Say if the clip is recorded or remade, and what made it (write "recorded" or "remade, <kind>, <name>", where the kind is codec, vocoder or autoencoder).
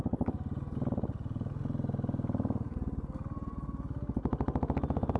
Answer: recorded